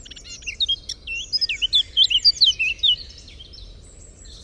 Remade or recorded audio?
recorded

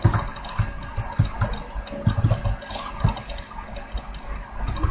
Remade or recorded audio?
recorded